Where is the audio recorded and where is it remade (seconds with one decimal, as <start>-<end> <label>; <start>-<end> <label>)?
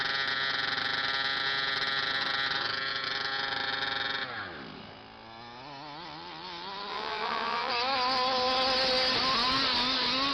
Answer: 0.0-6.9 recorded; 6.9-7.7 remade; 7.7-10.3 recorded